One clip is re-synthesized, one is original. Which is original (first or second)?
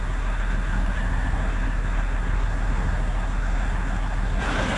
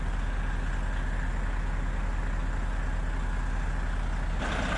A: second